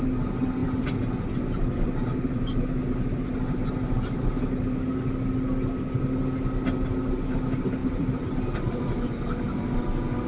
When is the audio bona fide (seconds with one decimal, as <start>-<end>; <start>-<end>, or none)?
0.0-0.6; 1.9-7.8; 9.8-10.3